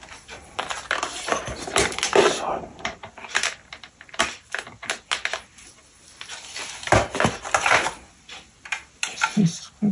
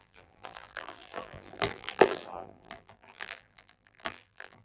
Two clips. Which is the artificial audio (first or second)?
second